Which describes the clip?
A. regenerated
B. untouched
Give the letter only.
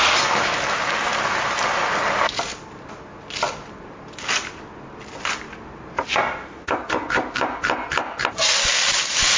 B